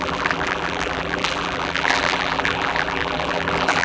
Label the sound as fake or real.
fake